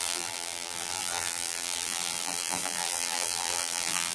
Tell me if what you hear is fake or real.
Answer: fake